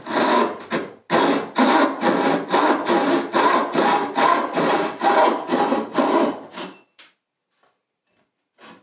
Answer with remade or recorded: recorded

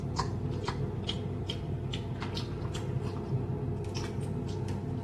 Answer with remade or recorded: recorded